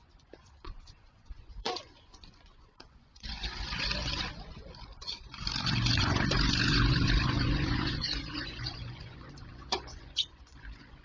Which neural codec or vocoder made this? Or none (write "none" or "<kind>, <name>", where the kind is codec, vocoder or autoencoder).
vocoder, Vocos